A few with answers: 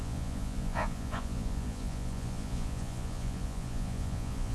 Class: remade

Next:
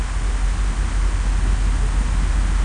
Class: recorded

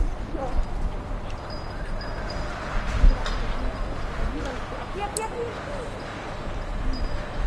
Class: recorded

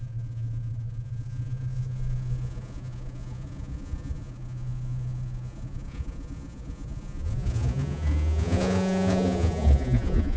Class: remade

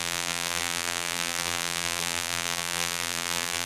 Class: remade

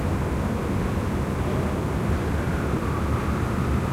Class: recorded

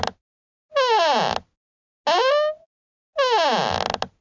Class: recorded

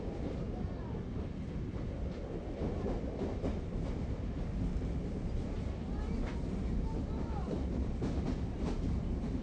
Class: recorded